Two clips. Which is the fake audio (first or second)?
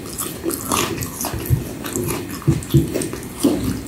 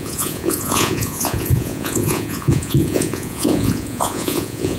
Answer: second